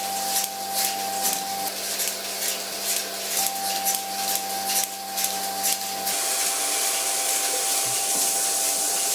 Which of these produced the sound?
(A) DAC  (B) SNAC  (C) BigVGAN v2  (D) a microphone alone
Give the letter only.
D